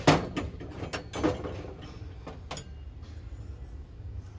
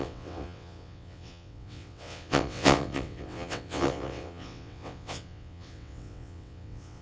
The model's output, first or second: second